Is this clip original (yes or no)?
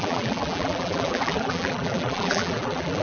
no